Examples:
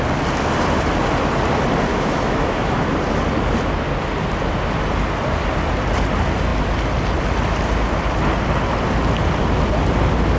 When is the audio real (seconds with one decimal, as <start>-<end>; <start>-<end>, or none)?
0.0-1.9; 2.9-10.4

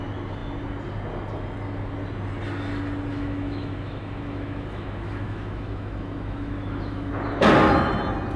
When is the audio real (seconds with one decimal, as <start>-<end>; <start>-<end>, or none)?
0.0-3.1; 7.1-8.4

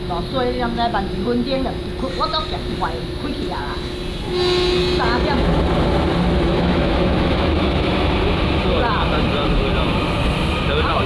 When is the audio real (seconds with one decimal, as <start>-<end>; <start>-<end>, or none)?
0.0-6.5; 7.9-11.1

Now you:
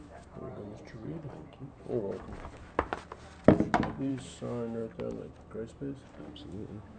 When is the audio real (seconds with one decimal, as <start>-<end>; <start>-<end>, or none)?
0.4-4.1; 4.8-6.4

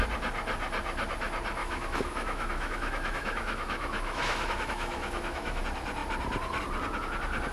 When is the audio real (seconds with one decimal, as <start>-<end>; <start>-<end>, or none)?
0.0-1.6; 5.6-7.5

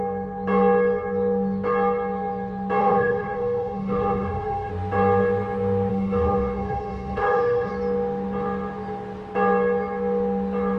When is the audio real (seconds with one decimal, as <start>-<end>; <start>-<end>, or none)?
0.0-2.8; 4.7-5.9; 7.7-10.8